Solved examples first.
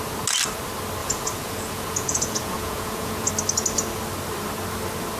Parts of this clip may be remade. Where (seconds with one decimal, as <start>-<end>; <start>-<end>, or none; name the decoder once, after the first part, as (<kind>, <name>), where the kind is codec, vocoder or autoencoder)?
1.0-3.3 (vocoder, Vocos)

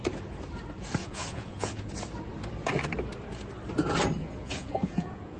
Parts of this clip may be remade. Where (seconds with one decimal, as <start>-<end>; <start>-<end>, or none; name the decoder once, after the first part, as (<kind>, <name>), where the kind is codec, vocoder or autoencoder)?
1.0-1.9 (vocoder, Vocos); 4.2-5.4

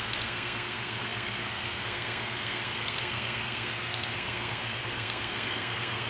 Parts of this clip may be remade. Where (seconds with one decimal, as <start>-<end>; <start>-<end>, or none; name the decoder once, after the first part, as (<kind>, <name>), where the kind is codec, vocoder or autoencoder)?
0.0-6.1 (codec, SNAC)

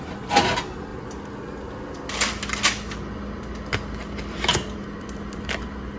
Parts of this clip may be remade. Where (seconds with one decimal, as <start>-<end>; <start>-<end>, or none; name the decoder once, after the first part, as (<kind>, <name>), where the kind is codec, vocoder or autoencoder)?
none

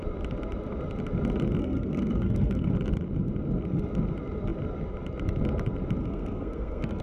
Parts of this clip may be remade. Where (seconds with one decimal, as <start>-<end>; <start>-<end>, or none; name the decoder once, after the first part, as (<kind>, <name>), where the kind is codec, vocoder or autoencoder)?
1.6-2.7 (codec, SNAC); 6.0-7.0